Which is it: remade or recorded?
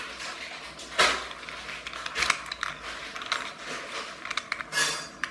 recorded